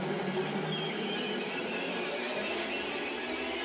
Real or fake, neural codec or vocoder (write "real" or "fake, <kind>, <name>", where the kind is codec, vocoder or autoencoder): real